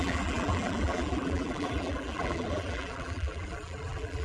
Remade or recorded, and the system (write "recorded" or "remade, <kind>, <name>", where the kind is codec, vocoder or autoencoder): remade, vocoder, BigVGAN v2